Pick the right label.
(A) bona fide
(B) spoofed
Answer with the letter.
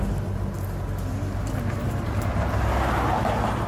A